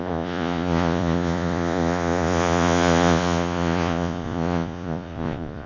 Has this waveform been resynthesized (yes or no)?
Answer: yes